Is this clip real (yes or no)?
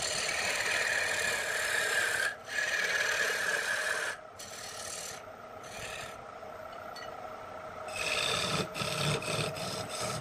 yes